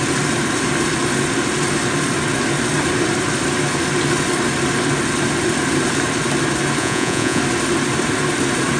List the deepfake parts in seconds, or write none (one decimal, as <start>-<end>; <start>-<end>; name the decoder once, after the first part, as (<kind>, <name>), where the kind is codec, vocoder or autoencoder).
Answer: 6.8-7.4 (vocoder, Vocos)